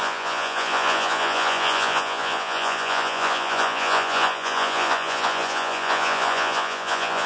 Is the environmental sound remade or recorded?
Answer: remade